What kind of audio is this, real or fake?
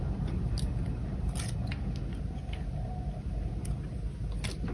real